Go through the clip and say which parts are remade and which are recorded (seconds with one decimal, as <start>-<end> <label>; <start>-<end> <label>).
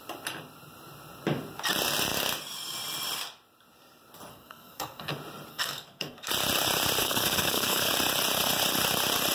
0.0-4.3 recorded; 4.3-5.1 remade; 5.1-5.5 recorded; 5.5-6.3 remade; 6.3-7.0 recorded; 7.0-7.9 remade; 7.9-9.3 recorded